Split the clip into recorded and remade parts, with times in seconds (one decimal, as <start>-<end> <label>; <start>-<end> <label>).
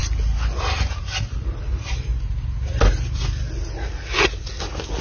0.0-1.6 recorded; 1.6-2.1 remade; 2.1-5.0 recorded